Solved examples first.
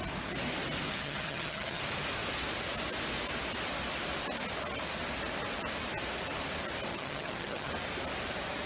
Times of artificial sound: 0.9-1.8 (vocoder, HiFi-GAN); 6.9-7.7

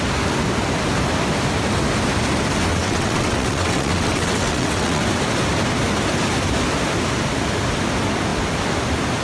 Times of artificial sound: 2.7-5.0 (vocoder, WaveNeXt)

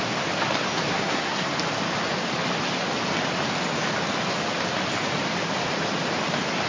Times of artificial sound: 0.9-1.5 (codec, SNAC)

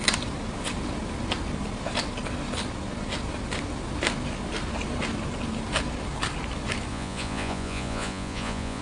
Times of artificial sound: 6.9-8.8 (vocoder, Vocos)